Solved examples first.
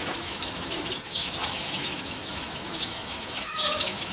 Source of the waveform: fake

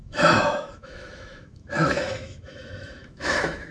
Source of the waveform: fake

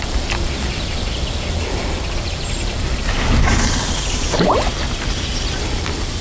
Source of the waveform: real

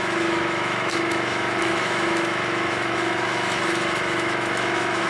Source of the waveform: fake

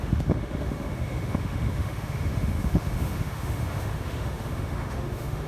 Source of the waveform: fake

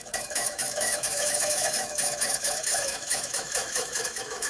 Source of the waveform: fake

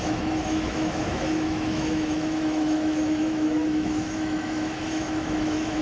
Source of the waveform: fake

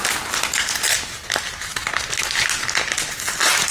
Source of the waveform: real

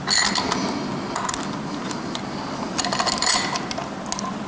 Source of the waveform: real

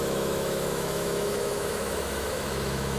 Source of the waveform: fake